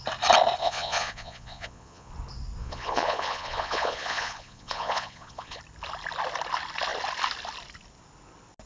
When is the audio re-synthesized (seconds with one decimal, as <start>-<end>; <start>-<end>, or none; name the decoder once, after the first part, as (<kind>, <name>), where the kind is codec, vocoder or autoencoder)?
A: 0.6-2.1 (vocoder, Vocos); 2.6-5.6